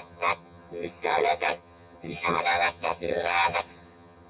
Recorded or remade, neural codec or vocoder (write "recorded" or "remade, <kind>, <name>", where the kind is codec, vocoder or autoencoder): remade, vocoder, HiFi-GAN